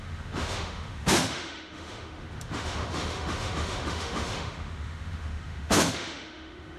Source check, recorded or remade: remade